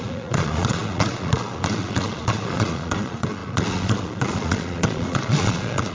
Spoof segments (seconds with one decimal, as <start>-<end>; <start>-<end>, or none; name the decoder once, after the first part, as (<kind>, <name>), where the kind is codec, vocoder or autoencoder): 0.0-5.9 (vocoder, Vocos)